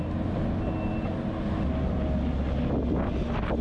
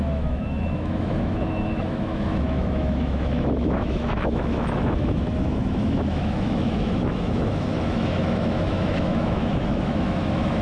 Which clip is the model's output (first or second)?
second